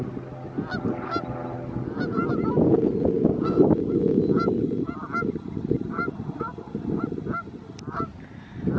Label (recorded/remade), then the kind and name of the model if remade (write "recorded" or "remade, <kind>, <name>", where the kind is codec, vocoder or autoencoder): recorded